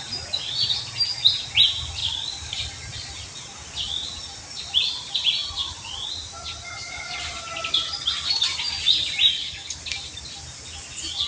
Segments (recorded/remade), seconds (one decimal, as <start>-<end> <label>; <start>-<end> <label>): 0.0-2.0 recorded; 2.0-2.5 remade; 2.5-9.3 recorded; 9.3-9.8 remade; 9.8-11.3 recorded